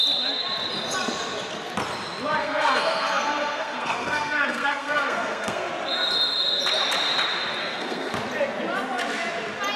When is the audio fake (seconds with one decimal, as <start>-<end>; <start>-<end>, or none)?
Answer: 2.4-5.7; 7.6-8.1